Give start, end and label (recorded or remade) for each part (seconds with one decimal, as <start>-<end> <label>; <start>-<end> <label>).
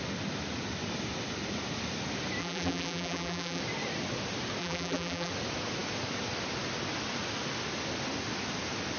0.0-2.4 recorded; 2.4-3.6 remade; 3.6-4.6 recorded; 4.6-5.3 remade; 5.3-9.0 recorded